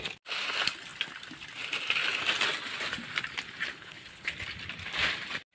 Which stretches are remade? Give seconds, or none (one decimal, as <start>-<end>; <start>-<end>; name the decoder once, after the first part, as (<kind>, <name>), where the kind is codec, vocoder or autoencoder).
3.7-4.3 (codec, HILCodec)